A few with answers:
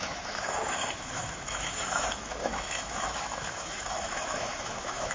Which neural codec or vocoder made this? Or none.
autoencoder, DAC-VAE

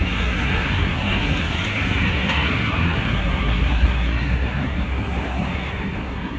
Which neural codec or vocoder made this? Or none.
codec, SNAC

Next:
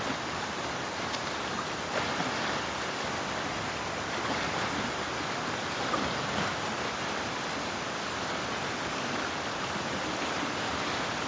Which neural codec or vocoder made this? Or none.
none